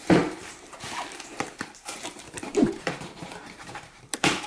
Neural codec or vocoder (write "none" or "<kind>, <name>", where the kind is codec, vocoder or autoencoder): vocoder, BigVGAN v2